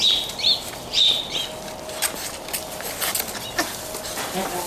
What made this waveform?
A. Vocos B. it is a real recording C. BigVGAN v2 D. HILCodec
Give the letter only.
B